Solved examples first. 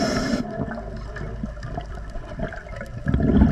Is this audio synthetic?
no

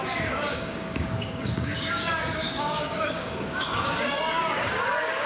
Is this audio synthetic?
yes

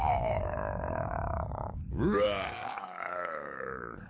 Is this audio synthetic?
yes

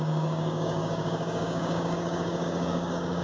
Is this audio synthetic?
yes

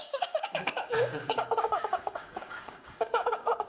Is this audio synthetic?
yes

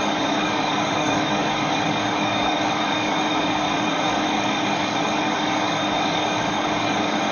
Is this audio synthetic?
yes